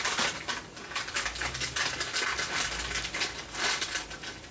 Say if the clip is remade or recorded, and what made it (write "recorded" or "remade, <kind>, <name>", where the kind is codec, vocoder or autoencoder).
recorded